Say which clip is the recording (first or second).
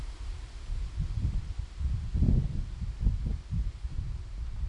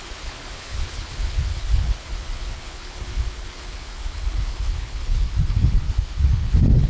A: first